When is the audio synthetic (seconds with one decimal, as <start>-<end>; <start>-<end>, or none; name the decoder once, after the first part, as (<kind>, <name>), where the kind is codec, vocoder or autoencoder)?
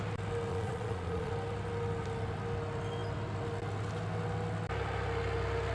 0.5-1.3 (vocoder, Vocos)